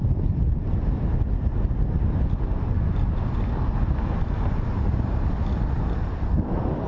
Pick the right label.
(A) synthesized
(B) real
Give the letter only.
B